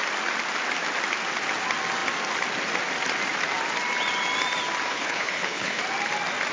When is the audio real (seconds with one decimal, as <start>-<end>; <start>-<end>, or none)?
0.0-4.9; 5.8-6.5